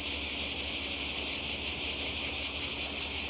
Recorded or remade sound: recorded